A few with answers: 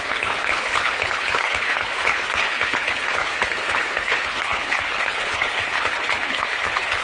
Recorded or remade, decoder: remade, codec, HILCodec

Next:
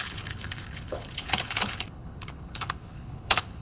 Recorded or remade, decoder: remade, codec, HILCodec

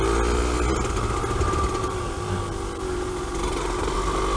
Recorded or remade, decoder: recorded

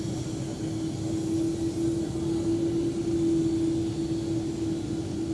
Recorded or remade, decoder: recorded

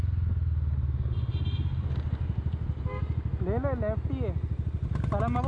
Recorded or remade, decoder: recorded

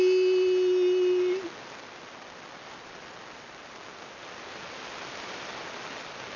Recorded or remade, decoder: recorded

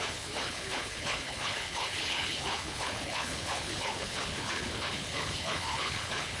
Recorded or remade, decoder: remade, codec, HILCodec